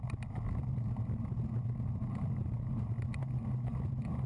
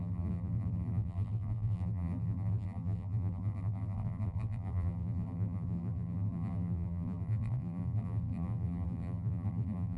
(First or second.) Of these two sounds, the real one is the first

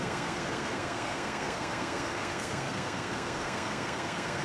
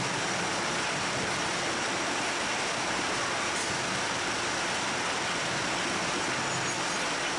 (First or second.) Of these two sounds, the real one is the second